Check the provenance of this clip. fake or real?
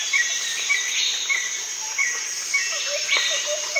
fake